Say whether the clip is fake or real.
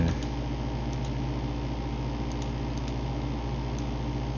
real